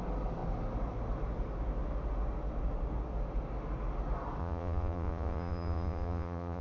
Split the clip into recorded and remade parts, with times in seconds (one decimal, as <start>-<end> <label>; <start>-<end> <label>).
0.0-4.4 recorded; 4.4-6.6 remade